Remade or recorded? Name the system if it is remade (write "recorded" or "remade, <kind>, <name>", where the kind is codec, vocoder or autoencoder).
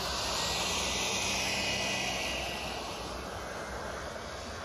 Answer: recorded